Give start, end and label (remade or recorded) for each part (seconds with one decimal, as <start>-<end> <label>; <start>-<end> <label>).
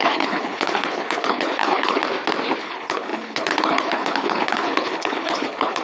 0.0-2.0 remade; 2.0-2.6 recorded; 2.6-5.8 remade